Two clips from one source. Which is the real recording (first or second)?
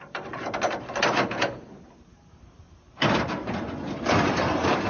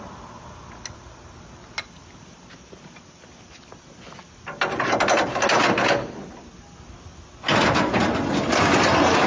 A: second